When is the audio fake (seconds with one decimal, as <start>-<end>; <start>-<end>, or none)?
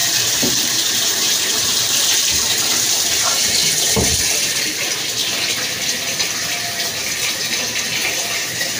0.0-4.6; 8.0-8.8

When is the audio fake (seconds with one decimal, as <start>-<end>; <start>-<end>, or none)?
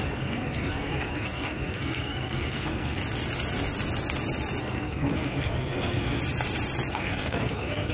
0.0-3.0; 4.6-6.2; 6.9-7.9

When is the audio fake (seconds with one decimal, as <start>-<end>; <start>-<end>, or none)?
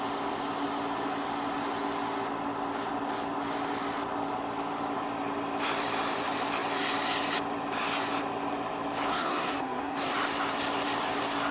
9.1-10.1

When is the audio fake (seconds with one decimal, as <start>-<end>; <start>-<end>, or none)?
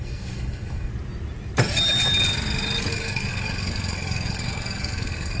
0.0-0.9; 2.9-5.4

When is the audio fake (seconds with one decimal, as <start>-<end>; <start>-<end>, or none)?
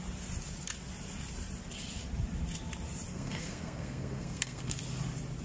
3.1-4.8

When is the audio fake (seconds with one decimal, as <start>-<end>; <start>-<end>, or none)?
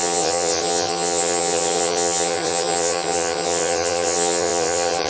0.0-5.1